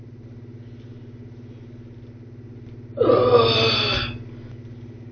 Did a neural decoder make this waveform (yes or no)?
no